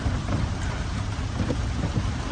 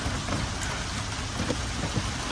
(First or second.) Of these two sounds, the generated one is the first